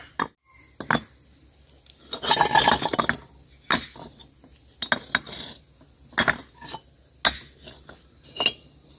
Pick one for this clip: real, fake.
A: real